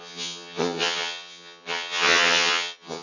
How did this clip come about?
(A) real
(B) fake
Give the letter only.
B